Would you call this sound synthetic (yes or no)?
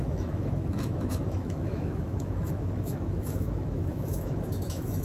yes